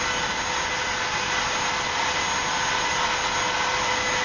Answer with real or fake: real